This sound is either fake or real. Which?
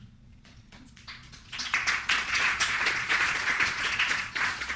fake